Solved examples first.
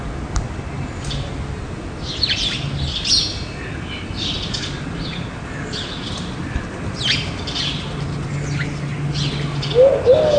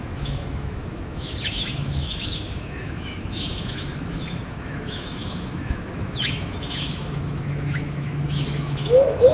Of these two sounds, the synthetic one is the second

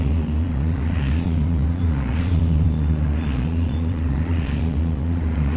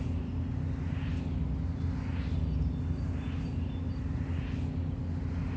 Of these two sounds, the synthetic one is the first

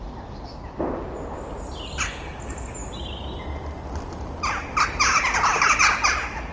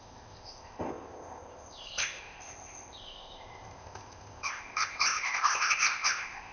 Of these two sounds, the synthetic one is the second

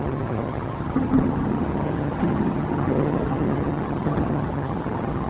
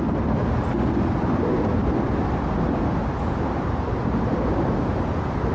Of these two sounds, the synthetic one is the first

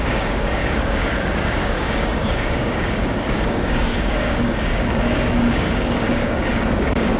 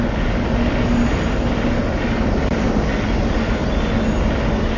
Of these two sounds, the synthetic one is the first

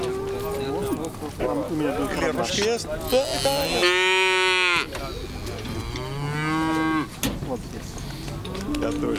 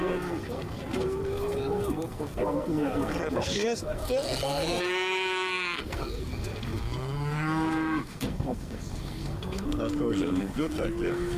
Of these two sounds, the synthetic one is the second